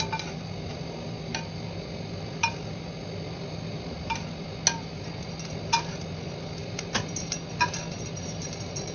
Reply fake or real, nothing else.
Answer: real